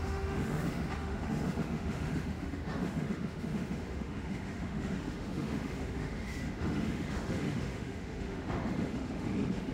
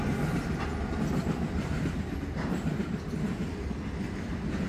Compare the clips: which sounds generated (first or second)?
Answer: first